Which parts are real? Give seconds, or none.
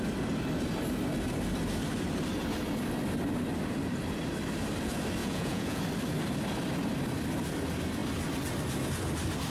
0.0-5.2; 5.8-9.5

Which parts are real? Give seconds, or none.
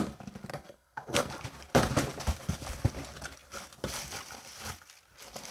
0.0-0.5; 1.3-5.5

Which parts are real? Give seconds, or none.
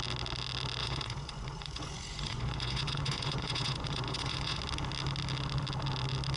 0.0-0.8; 4.6-6.4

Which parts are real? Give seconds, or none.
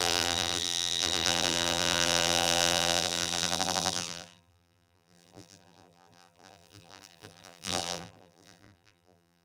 none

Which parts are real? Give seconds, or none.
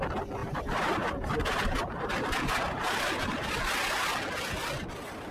0.0-0.4; 3.6-5.3